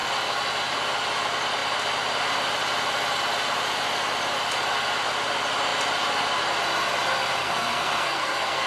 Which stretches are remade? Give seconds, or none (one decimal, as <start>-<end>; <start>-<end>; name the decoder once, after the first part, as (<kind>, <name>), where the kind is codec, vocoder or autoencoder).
7.4-8.7 (codec, SNAC)